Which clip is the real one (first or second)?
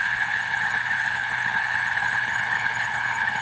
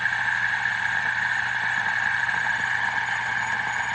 second